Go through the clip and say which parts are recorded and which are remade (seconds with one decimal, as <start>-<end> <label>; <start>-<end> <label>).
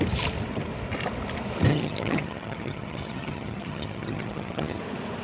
0.0-1.7 recorded; 1.7-4.8 remade; 4.8-5.2 recorded